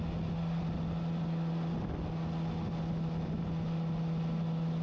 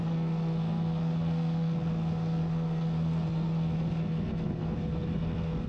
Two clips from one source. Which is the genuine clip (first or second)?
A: first